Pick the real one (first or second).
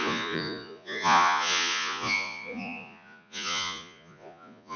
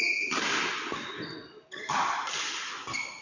second